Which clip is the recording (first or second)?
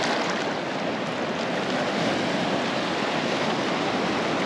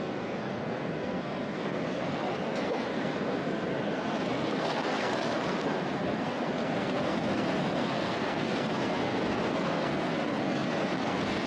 first